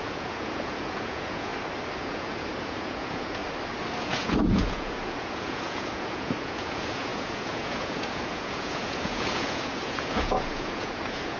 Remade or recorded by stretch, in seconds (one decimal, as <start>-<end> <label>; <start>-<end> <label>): 0.0-1.5 remade; 1.5-2.0 recorded; 2.0-3.4 remade; 3.4-4.0 recorded; 4.0-11.4 remade